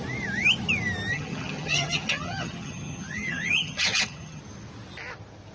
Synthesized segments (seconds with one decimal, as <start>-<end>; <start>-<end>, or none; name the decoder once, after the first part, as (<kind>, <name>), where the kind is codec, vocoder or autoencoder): 1.1-4.4 (vocoder, HiFi-GAN)